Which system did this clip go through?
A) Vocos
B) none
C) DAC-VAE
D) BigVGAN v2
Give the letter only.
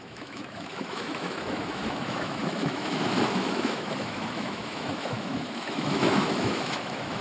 C